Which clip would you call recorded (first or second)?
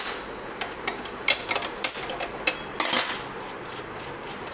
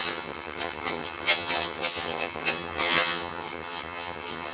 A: first